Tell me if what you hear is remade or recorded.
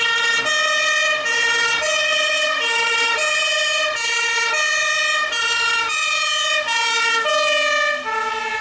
recorded